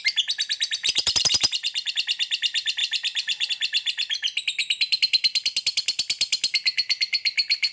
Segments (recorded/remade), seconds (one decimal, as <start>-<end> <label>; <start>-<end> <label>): 0.0-0.8 recorded; 0.8-1.9 remade; 1.9-2.8 recorded; 2.8-3.5 remade; 3.5-7.7 recorded